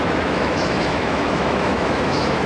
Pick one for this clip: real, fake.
fake